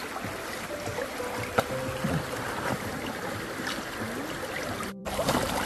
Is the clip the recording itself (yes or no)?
no